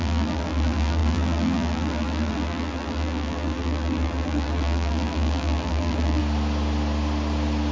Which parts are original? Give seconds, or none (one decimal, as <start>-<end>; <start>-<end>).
6.2-7.7